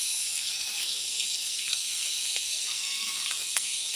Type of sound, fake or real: fake